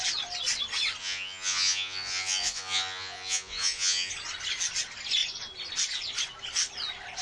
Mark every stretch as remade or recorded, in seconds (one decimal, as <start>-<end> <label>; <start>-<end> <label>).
0.0-1.0 recorded; 1.0-4.1 remade; 4.1-7.2 recorded